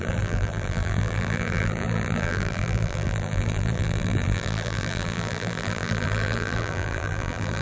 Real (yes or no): no